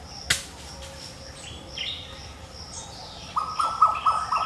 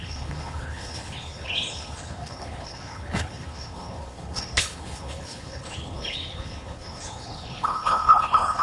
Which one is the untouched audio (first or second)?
first